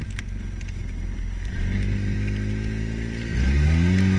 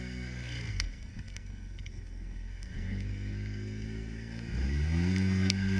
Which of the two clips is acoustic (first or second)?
first